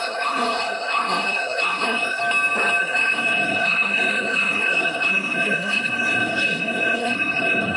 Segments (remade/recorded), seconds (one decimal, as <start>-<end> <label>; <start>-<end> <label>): 0.0-2.2 remade; 2.2-2.8 recorded; 2.8-7.8 remade